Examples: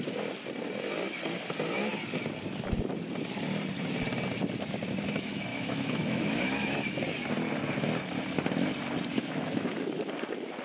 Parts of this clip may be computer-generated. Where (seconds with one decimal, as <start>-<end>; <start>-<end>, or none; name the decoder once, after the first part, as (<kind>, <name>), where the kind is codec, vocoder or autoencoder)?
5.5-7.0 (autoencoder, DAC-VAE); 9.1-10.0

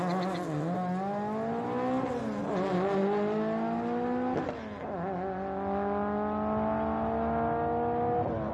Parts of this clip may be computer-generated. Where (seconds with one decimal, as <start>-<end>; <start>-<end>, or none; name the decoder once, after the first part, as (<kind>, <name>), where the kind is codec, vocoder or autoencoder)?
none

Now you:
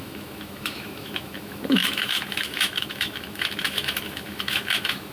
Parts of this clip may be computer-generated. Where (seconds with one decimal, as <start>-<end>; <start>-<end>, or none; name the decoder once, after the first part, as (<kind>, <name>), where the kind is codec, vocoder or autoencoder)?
0.0-5.1 (autoencoder, DAC-VAE)

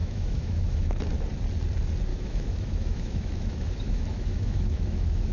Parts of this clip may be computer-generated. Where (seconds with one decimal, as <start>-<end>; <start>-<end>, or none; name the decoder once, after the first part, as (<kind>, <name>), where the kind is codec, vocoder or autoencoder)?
0.0-1.0 (autoencoder, DAC-VAE); 2.1-5.3